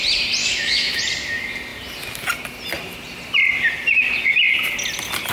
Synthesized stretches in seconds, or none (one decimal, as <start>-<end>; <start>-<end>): 0.4-1.0